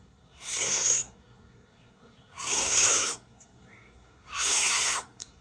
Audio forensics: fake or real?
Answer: fake